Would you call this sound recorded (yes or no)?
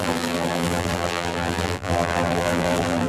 no